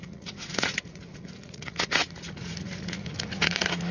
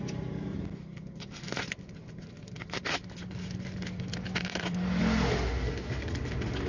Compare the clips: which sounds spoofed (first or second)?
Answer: first